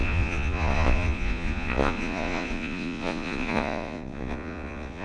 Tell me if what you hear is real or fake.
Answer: fake